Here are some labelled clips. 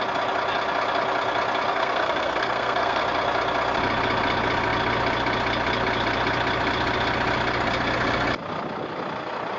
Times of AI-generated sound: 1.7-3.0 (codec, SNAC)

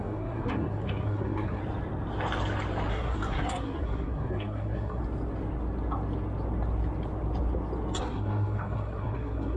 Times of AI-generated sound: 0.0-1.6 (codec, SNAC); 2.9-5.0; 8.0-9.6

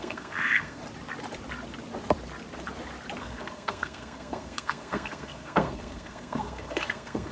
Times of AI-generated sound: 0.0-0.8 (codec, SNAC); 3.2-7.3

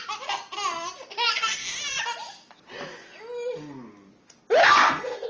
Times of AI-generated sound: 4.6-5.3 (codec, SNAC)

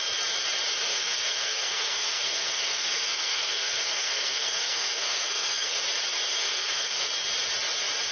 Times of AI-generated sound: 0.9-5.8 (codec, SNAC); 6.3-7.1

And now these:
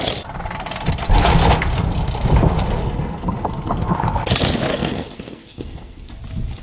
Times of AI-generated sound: 2.8-4.3 (codec, SNAC); 4.7-6.1